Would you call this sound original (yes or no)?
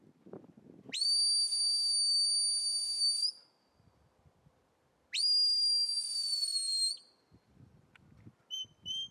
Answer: yes